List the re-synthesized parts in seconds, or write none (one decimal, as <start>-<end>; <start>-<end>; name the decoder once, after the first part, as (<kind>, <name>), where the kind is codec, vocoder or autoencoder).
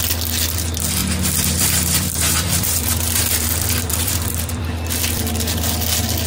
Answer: 1.0-4.6 (vocoder, BigVGAN v2)